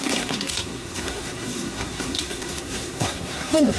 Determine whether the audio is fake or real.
fake